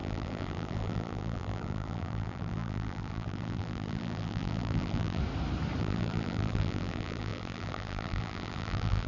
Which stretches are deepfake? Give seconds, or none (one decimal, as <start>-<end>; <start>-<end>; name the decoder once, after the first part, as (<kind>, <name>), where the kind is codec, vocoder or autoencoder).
0.0-5.2 (vocoder, BigVGAN v2); 5.8-9.1